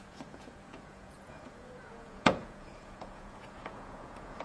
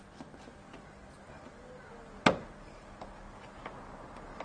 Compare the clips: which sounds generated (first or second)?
first